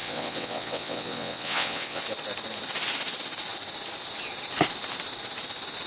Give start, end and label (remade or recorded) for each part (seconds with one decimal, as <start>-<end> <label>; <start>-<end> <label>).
0.0-2.0 remade; 2.0-5.9 recorded